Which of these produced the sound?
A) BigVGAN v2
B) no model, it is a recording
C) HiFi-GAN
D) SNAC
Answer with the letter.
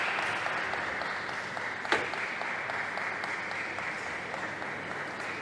B